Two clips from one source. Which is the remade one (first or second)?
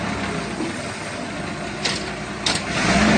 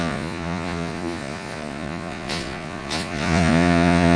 second